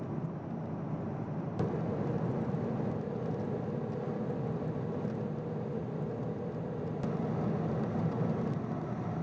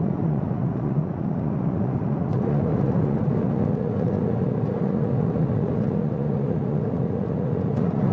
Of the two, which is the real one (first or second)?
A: first